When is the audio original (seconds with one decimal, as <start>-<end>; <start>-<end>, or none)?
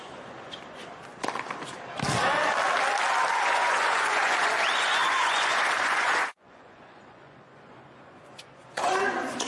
0.8-3.3